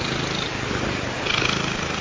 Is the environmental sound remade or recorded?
recorded